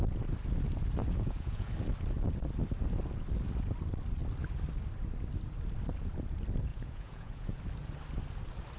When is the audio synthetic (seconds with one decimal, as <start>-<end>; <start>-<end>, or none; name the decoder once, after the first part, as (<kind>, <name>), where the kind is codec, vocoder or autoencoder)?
1.0-1.7 (vocoder, Vocos); 6.7-7.6